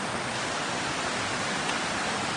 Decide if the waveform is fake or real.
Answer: real